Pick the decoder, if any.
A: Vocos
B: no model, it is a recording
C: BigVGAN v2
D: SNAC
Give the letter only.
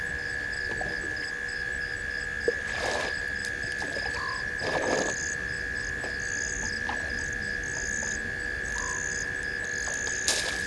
B